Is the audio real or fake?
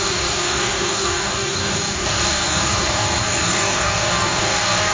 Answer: fake